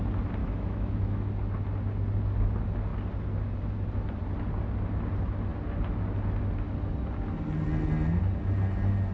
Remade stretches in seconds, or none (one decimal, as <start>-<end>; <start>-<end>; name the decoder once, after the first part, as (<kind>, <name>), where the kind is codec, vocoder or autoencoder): 0.4-1.3 (autoencoder, DAC-VAE)